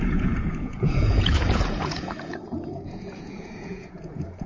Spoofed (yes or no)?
yes